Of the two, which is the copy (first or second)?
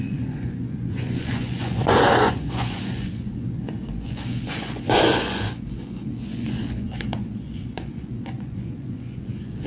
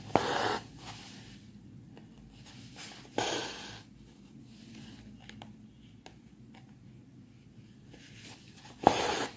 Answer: first